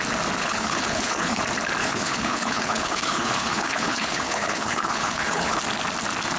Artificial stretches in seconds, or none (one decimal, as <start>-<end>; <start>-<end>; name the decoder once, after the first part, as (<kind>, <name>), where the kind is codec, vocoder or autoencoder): 0.4-1.4 (codec, HILCodec); 1.8-5.6